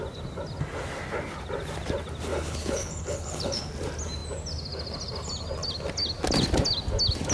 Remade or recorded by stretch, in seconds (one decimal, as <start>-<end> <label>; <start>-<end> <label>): 0.0-2.3 recorded; 2.3-3.7 remade; 3.7-7.3 recorded